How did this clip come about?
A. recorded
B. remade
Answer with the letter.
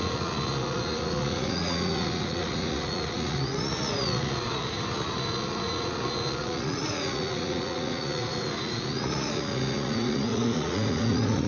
B